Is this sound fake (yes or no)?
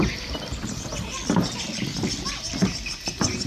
no